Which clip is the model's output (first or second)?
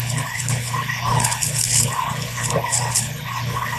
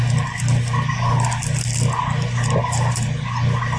first